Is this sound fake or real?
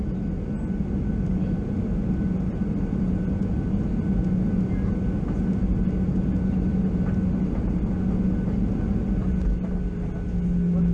real